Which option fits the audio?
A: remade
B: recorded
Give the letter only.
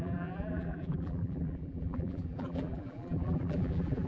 A